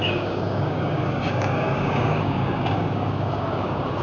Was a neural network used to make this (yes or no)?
yes